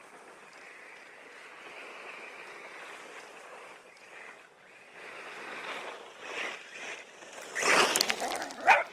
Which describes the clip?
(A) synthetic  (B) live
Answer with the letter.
B